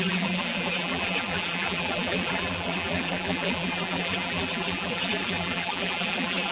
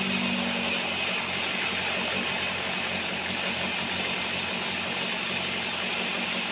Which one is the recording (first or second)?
second